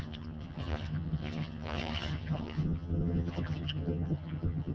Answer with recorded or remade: remade